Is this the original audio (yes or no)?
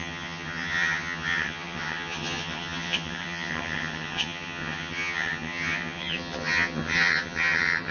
no